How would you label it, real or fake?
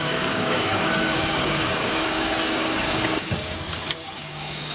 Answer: fake